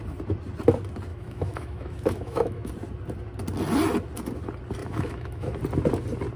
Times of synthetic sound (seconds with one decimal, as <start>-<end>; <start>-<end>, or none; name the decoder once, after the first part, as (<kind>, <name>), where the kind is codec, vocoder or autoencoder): 1.1-2.7 (autoencoder, DAC-VAE); 4.8-5.6